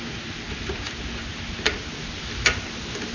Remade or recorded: recorded